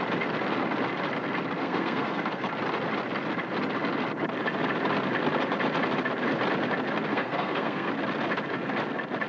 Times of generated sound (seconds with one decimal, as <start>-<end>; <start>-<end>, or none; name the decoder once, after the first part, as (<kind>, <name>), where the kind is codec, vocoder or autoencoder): 1.6-2.5 (codec, SNAC); 7.1-7.9